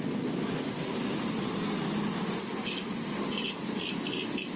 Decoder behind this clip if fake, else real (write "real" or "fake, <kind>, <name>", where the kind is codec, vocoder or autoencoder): real